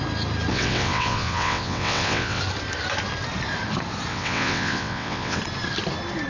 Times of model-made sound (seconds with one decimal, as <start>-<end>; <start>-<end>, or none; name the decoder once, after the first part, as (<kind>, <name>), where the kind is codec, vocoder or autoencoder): 0.5-2.4 (vocoder, WaveNeXt); 4.1-5.4